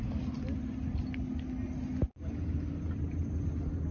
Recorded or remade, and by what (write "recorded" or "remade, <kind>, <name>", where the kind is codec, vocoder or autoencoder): recorded